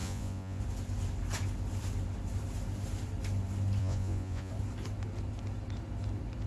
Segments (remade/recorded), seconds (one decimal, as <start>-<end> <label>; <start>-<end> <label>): 0.0-0.6 remade; 0.6-3.8 recorded; 3.8-4.5 remade; 4.5-6.5 recorded